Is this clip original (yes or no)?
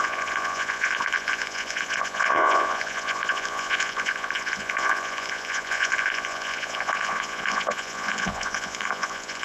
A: no